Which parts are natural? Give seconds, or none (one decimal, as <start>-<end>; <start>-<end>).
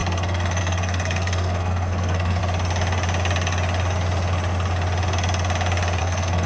2.4-6.0